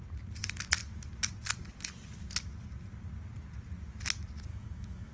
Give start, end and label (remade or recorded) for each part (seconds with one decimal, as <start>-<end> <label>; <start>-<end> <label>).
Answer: 0.0-4.5 recorded; 4.5-5.1 remade

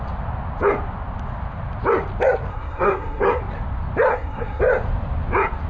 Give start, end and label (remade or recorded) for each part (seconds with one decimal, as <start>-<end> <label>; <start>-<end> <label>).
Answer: 0.0-2.5 recorded; 2.5-3.4 remade; 3.4-4.1 recorded; 4.1-4.6 remade; 4.6-5.7 recorded